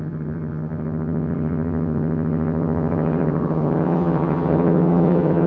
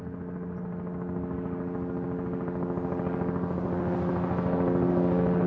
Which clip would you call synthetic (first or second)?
first